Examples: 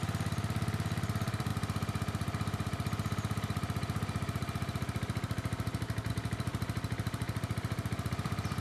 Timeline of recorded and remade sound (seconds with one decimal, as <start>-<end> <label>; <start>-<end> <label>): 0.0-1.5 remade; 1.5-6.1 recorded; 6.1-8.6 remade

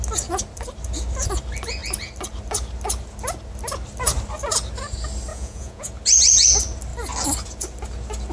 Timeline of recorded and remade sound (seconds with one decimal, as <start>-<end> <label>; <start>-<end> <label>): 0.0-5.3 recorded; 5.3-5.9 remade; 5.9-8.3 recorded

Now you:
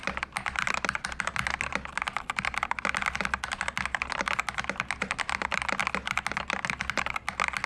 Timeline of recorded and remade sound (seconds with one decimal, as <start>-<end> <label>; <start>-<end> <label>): 0.0-7.7 recorded